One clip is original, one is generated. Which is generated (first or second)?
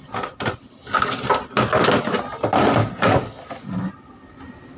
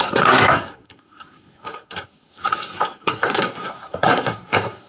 second